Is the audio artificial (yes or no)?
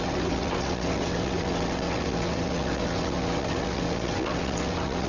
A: yes